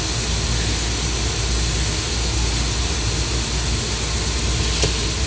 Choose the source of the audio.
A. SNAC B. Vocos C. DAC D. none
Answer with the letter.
D